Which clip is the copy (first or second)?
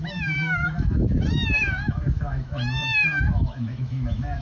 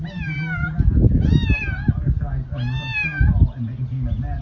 first